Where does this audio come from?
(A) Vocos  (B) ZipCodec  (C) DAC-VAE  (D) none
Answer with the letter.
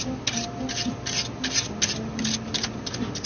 D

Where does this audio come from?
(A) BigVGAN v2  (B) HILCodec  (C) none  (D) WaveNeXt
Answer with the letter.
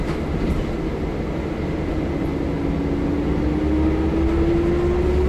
C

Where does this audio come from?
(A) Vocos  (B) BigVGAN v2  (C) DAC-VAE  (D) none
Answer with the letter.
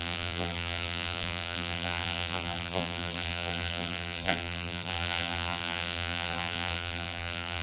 B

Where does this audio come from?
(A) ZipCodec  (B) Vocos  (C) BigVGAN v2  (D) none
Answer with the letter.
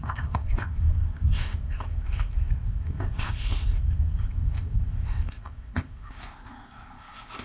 A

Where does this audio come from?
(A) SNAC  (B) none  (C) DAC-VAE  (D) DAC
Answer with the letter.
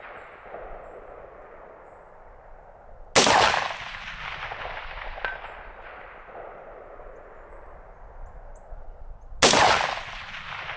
B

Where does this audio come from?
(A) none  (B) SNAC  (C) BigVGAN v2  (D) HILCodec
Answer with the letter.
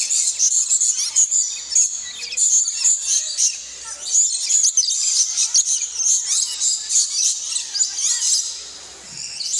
A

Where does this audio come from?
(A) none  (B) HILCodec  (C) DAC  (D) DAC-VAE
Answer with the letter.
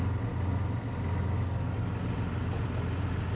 A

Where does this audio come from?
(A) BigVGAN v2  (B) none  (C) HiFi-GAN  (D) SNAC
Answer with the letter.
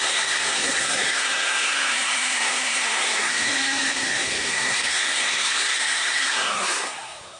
D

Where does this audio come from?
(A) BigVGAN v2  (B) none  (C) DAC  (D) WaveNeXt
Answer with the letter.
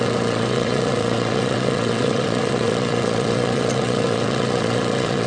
D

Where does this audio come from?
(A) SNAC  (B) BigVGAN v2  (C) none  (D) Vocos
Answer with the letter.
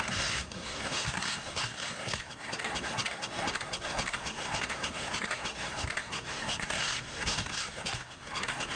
A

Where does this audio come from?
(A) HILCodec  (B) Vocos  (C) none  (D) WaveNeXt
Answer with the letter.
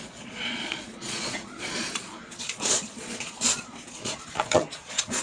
B